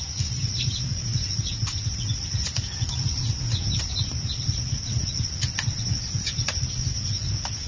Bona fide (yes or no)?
yes